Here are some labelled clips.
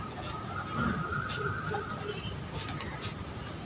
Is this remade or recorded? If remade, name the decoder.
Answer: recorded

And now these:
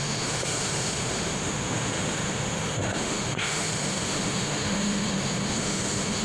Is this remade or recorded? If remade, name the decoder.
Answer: remade, autoencoder, DAC-VAE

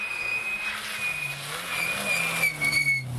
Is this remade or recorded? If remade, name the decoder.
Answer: recorded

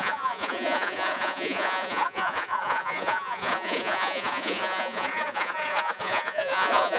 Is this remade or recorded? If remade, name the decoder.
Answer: remade, vocoder, Vocos